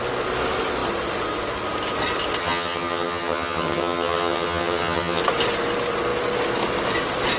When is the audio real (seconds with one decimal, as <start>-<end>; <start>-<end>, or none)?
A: 0.0-2.4; 5.2-7.4